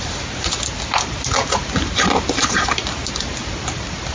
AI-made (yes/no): no